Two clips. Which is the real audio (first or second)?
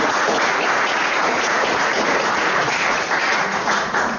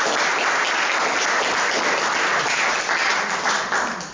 second